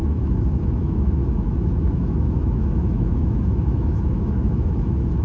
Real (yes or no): no